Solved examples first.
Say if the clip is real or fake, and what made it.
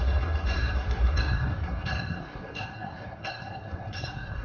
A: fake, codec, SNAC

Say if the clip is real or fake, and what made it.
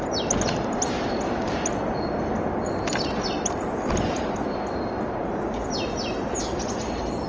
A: real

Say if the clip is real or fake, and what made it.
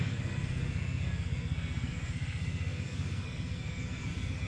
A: fake, codec, SNAC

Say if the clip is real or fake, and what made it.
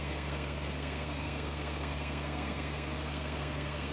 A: fake, codec, SNAC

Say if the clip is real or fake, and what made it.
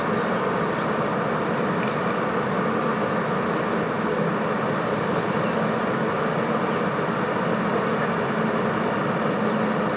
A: real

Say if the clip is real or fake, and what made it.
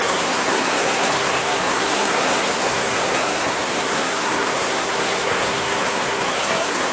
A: fake, codec, SNAC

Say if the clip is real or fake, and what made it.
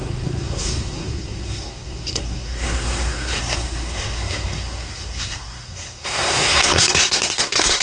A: fake, codec, SNAC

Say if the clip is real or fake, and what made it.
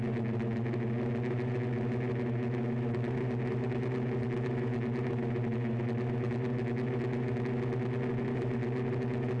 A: real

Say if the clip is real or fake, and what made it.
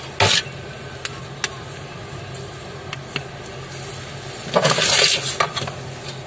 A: real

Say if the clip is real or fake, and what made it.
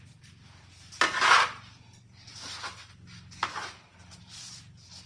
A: real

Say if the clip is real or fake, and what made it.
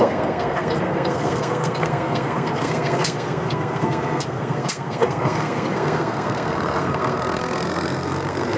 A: fake, codec, SNAC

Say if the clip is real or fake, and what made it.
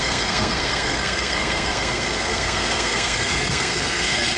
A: fake, codec, SNAC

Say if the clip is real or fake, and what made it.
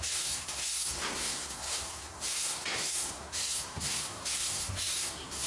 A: fake, codec, SNAC